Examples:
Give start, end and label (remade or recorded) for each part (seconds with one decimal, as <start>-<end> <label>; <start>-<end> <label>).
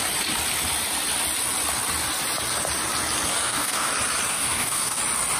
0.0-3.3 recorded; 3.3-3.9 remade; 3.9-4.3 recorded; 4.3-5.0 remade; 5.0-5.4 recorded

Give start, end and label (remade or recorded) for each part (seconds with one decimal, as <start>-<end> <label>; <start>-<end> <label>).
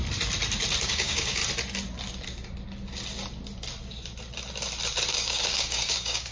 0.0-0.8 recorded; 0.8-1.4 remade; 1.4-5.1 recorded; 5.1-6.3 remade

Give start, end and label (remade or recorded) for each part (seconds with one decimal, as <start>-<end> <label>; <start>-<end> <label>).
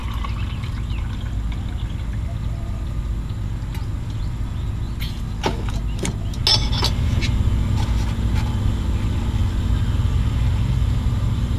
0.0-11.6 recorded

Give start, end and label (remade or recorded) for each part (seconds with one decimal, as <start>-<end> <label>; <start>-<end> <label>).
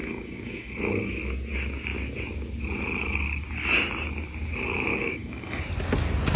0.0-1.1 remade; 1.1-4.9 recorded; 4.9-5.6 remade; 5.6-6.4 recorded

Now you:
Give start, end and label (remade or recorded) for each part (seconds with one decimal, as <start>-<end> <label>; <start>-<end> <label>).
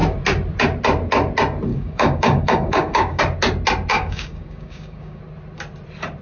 0.0-1.7 recorded; 1.7-3.2 remade; 3.2-3.9 recorded; 3.9-5.2 remade; 5.2-6.2 recorded